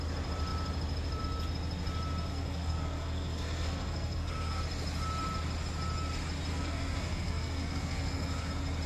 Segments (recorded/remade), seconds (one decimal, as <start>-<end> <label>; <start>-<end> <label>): 0.0-2.3 recorded; 2.3-4.6 remade; 4.6-6.5 recorded; 6.5-8.5 remade; 8.5-8.9 recorded